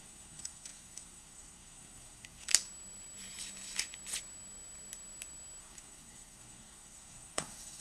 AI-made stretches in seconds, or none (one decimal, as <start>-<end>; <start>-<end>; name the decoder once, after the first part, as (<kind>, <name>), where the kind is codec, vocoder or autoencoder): 0.0-2.5 (codec, SNAC); 5.6-7.8